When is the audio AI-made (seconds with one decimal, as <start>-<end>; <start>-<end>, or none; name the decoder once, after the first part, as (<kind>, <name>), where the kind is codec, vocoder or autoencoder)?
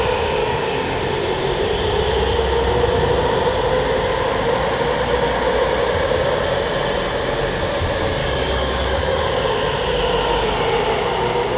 0.4-1.0 (codec, DAC); 8.2-9.2